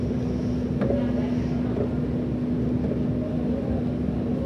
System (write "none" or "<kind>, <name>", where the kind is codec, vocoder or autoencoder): none